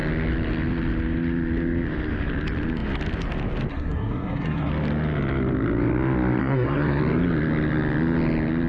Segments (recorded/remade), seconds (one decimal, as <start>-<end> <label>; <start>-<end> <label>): 0.0-3.7 recorded; 3.7-4.7 remade; 4.7-6.4 recorded; 6.4-7.0 remade; 7.0-8.7 recorded